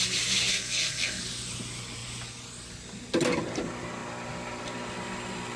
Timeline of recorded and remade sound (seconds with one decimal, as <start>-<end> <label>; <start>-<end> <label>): 0.0-0.5 recorded; 0.5-1.2 remade; 1.2-5.6 recorded